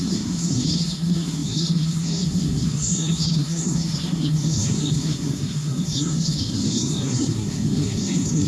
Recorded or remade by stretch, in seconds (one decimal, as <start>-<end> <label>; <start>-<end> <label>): 0.0-8.5 remade